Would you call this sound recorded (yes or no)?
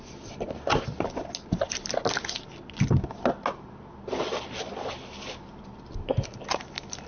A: yes